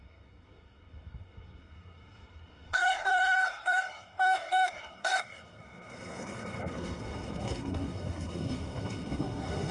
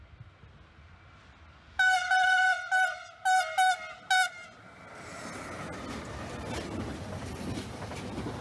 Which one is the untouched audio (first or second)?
second